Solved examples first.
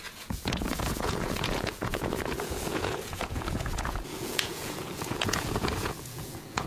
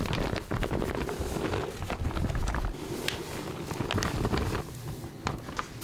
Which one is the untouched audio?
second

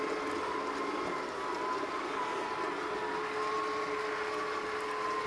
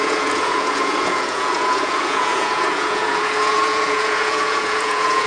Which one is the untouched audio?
first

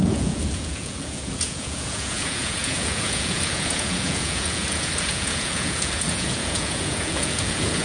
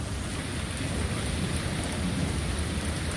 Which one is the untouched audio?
second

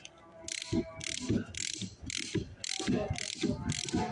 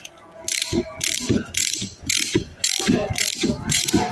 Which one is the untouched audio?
first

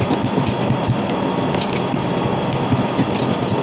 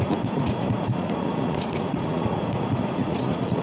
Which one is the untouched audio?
first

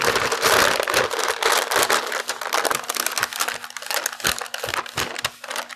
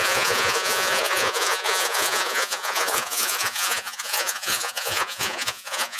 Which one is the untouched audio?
first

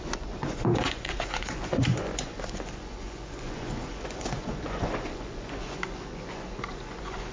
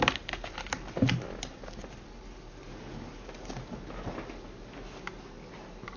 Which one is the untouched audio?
second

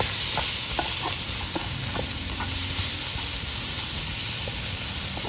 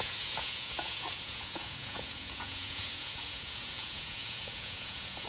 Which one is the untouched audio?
first